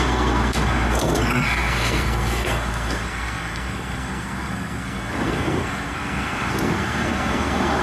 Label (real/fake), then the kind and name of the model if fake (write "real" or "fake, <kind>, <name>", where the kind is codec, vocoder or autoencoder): fake, codec, SNAC